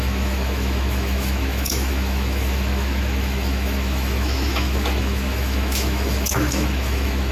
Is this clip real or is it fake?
fake